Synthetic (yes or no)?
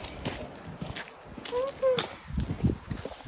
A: no